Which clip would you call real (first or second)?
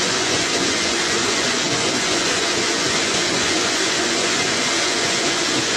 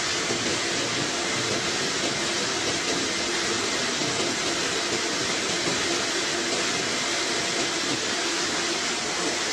second